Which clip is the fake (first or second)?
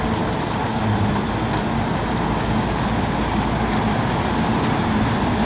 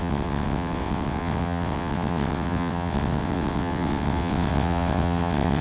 second